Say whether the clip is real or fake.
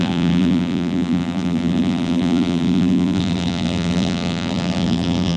fake